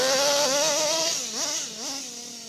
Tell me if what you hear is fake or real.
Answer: real